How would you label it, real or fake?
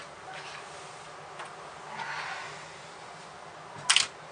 real